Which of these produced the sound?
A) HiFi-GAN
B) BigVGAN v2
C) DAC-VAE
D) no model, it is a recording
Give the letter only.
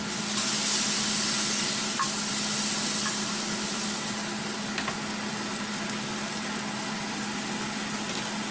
D